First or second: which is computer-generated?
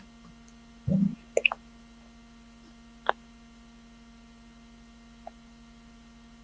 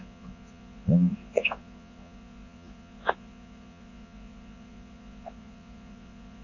second